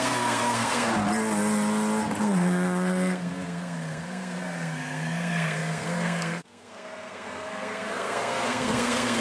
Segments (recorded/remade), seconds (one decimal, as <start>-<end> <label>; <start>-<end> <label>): 0.0-0.9 remade; 0.9-2.2 recorded; 2.2-9.2 remade